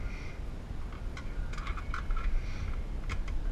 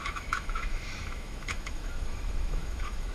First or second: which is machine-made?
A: second